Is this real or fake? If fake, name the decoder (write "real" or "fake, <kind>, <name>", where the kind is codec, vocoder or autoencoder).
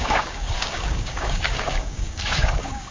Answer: fake, codec, DAC